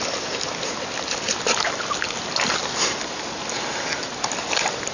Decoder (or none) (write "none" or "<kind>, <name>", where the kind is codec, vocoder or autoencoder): none